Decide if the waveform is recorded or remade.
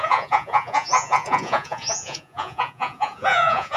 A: remade